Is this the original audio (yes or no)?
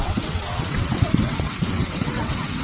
no